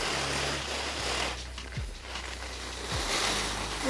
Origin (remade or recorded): recorded